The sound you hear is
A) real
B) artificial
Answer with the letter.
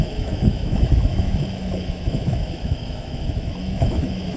B